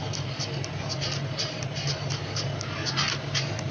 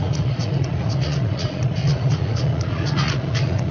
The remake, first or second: second